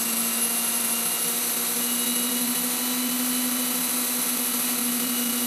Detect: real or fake real